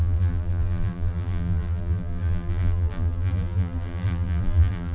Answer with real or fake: fake